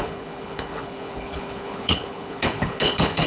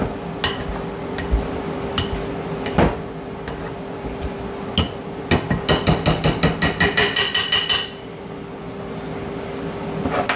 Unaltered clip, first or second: second